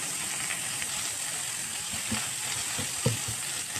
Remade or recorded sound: recorded